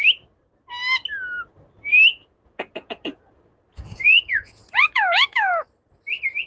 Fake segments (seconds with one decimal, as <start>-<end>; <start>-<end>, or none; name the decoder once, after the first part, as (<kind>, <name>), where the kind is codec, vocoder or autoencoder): 2.1-5.5 (vocoder, Vocos)